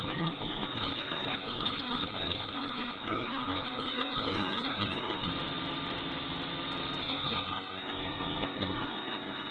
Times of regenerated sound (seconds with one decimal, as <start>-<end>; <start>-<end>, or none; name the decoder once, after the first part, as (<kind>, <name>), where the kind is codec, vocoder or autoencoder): 0.0-5.3 (codec, SNAC); 7.0-9.5